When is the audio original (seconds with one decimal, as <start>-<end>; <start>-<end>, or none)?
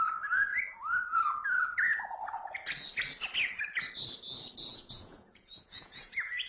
0.0-4.7; 6.1-6.5